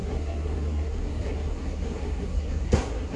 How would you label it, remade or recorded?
remade